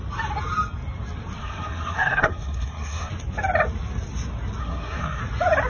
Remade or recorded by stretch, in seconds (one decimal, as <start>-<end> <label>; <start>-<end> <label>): 0.0-1.4 recorded; 1.4-3.1 remade; 3.1-4.6 recorded; 4.6-5.2 remade; 5.2-5.7 recorded